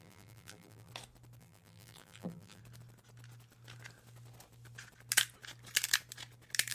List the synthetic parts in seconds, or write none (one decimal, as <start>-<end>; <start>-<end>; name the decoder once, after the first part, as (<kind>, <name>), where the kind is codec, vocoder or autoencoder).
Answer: 0.0-0.9 (vocoder, BigVGAN v2); 1.4-2.6